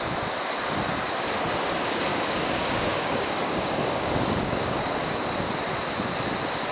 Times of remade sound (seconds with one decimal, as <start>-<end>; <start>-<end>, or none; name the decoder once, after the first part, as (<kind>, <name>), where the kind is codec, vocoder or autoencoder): 2.1-5.2 (codec, DAC)